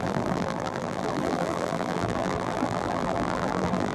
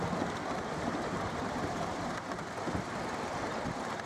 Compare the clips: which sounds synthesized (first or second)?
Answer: first